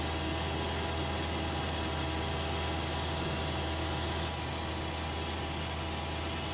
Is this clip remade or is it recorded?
recorded